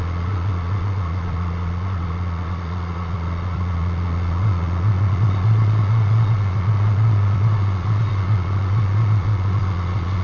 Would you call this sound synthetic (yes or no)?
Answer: yes